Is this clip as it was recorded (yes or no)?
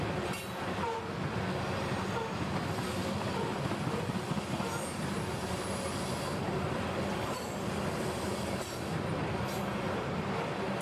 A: yes